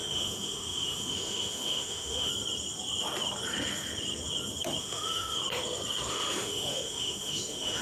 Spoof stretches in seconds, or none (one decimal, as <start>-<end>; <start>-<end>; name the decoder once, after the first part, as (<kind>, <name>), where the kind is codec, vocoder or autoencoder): 0.0-2.3 (autoencoder, DAC-VAE); 4.8-5.4; 6.1-7.8